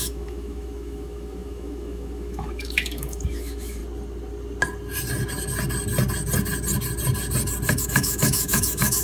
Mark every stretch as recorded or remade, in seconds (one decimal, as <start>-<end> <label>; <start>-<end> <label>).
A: 0.0-3.8 remade; 3.8-7.8 recorded; 7.8-9.0 remade